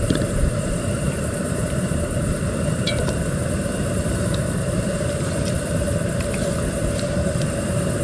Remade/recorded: remade